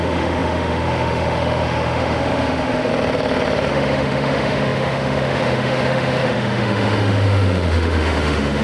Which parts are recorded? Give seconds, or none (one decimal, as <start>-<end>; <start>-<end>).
2.9-3.7